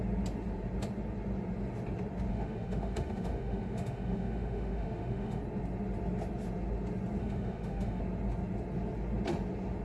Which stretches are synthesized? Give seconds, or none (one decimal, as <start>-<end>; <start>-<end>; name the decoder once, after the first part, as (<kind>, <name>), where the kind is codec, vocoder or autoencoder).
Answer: 2.3-5.4 (autoencoder, DAC-VAE); 7.2-8.0